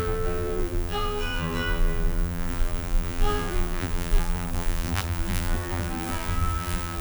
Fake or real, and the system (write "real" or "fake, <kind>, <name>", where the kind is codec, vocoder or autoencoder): fake, vocoder, BigVGAN v2